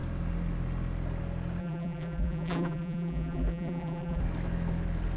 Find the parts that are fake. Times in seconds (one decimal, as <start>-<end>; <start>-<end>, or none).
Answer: 1.6-4.2